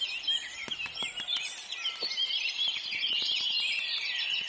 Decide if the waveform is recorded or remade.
recorded